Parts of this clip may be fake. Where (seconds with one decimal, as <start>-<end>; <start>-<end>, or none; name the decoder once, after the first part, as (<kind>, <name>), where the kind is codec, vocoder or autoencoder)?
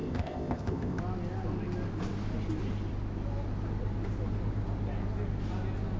0.0-1.0 (codec, ZipCodec)